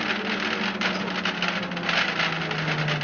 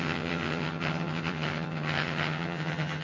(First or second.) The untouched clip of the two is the first